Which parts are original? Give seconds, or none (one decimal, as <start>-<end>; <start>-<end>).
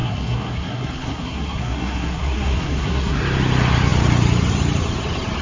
3.2-5.4